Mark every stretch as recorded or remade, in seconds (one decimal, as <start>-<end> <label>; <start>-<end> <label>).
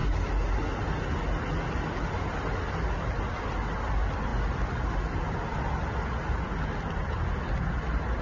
0.0-8.2 recorded